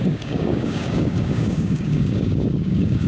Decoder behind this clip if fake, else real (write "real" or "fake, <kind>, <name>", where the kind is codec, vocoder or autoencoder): fake, codec, DAC